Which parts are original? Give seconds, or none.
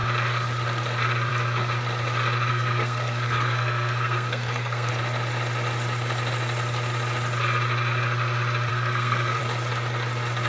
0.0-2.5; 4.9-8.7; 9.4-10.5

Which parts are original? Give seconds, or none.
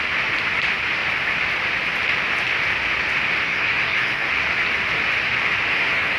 0.0-3.4; 4.3-5.7